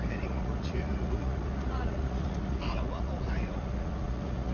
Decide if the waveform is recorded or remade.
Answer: remade